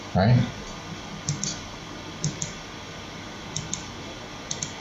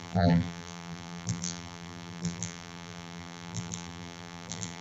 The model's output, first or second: second